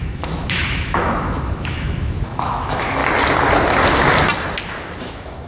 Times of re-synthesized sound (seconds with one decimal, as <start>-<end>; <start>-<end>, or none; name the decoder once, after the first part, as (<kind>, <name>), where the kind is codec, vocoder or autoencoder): 0.0-3.0 (autoencoder, DAC-VAE); 5.0-5.5